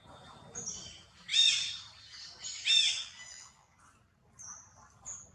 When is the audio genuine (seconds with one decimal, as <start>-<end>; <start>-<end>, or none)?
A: 0.0-3.0; 3.7-5.3